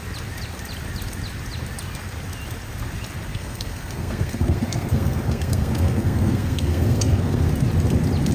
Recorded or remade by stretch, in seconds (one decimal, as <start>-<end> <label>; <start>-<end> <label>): 0.0-3.3 recorded; 3.3-7.5 remade; 7.5-8.3 recorded